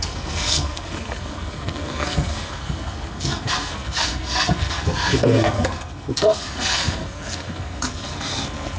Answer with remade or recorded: remade